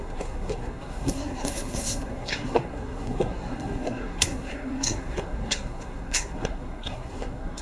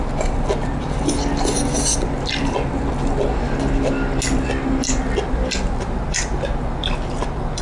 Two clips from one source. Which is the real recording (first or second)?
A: second